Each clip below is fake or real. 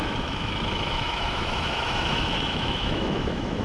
fake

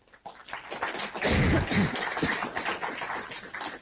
real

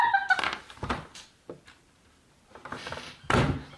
real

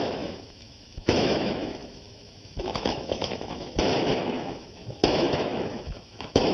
fake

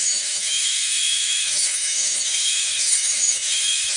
fake